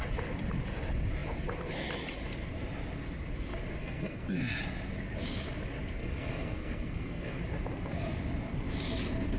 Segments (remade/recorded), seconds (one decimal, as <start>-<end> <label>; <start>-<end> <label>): 0.0-3.8 recorded; 3.8-4.6 remade; 4.6-6.0 recorded; 6.0-7.4 remade; 7.4-9.4 recorded